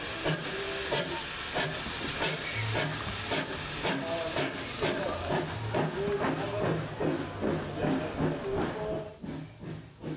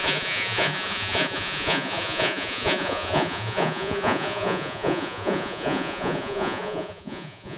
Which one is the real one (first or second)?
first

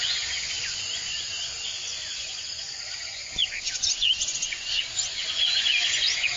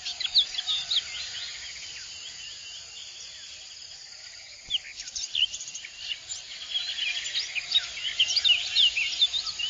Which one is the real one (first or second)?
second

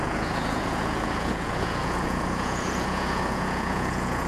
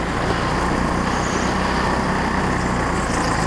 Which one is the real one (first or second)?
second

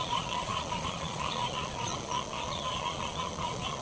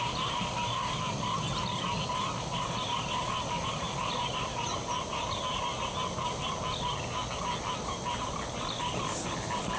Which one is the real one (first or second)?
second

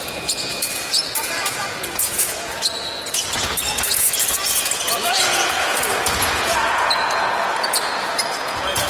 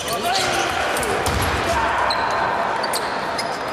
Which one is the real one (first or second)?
second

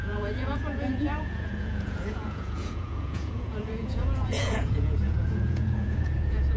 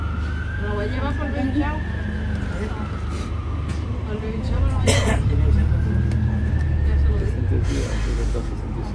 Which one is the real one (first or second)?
second